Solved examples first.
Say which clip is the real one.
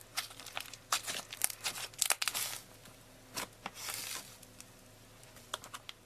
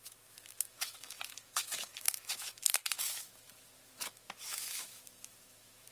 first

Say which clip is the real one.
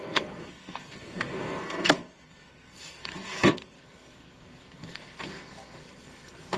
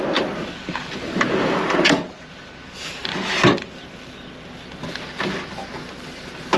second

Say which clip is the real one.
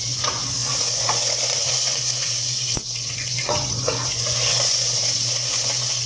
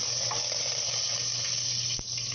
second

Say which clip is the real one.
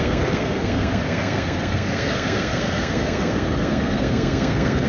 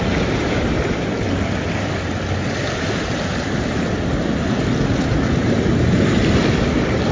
second